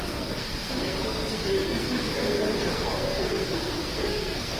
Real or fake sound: fake